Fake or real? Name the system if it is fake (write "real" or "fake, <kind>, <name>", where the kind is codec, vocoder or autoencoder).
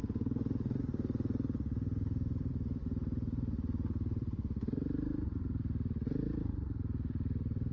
fake, vocoder, BigVGAN v2